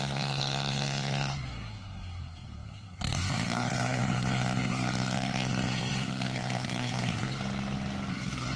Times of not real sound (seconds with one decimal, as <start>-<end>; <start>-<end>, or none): 0.0-7.4; 8.1-8.6